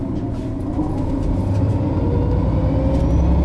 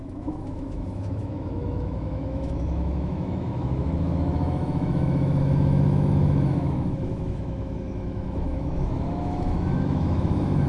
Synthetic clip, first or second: second